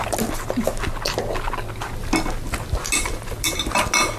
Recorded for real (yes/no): yes